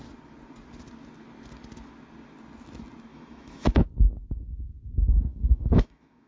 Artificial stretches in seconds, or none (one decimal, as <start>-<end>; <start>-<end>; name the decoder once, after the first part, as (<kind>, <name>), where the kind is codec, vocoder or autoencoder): 3.1-3.8 (autoencoder, DAC-VAE); 5.3-6.3